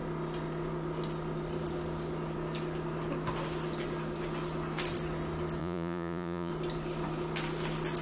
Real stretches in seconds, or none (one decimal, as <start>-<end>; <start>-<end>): 0.0-5.6; 6.5-8.0